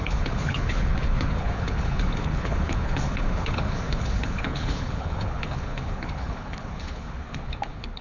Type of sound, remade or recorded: remade